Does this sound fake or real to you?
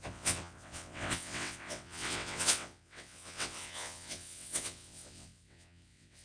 fake